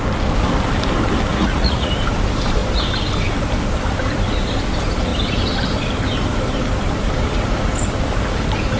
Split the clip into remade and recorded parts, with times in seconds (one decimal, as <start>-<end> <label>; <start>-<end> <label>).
0.0-1.3 recorded; 1.3-1.9 remade; 1.9-8.8 recorded